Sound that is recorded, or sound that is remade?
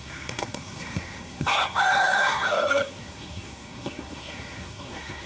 remade